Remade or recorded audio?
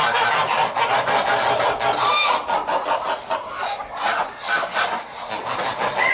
recorded